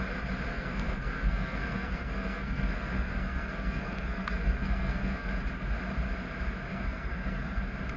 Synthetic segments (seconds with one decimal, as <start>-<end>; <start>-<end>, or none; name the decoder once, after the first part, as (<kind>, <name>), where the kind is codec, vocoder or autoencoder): 0.5-5.3 (codec, SNAC); 6.7-7.6